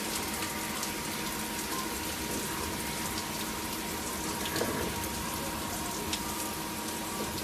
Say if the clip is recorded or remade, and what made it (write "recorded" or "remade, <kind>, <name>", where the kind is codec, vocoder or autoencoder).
recorded